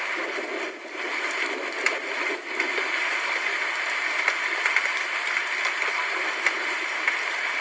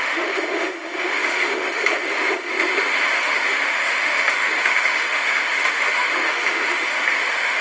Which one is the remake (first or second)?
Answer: second